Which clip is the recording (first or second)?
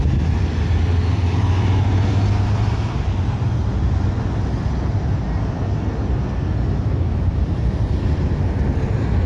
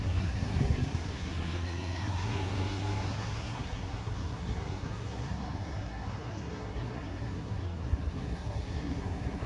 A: first